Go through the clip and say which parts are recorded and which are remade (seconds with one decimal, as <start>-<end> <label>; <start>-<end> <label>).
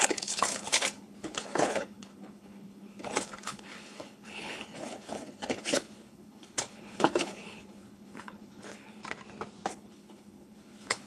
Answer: 0.0-9.0 remade; 9.0-9.7 recorded; 9.7-11.1 remade